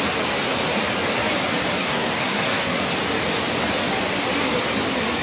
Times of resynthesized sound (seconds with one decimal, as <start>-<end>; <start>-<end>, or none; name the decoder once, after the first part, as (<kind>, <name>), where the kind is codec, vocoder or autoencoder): 1.8-2.8 (codec, SNAC)